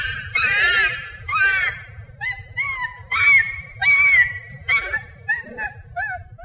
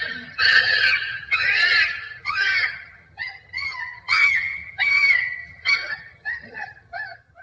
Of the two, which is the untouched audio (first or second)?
first